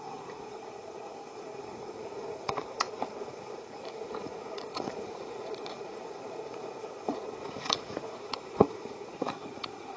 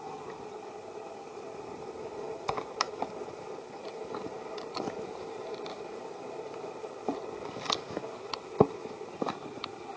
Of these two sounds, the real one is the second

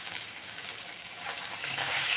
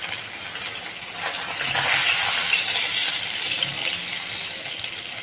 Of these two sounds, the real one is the second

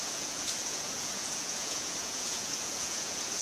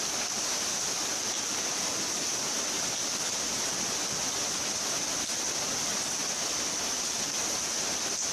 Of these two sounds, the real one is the second